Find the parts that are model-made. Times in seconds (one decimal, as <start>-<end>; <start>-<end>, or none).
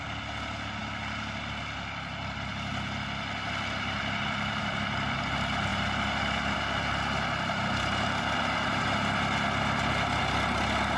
none